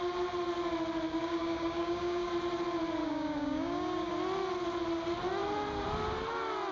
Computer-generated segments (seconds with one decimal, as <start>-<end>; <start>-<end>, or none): 1.1-2.3; 3.0-4.1